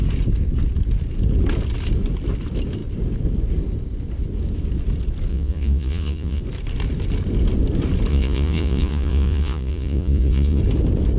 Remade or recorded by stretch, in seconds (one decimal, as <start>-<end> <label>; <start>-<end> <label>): 0.0-5.3 recorded; 5.3-6.4 remade; 6.4-8.1 recorded; 8.1-10.6 remade; 10.6-11.2 recorded